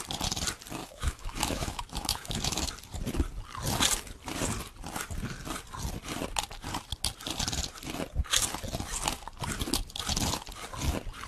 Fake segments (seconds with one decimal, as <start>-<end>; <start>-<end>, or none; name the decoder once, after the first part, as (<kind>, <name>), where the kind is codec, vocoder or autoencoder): 0.8-2.7 (autoencoder, DAC-VAE)